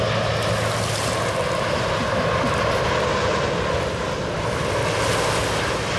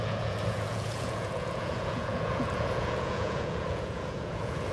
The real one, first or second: first